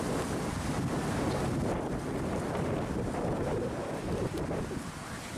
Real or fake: real